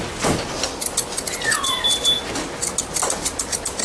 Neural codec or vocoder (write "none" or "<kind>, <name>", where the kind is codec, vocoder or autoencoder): none